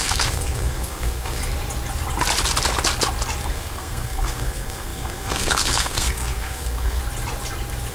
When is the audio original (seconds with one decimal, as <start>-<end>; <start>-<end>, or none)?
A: 1.4-3.5; 7.0-7.9